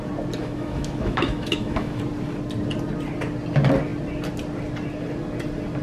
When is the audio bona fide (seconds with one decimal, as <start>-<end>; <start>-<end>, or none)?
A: 0.0-0.4; 2.0-5.8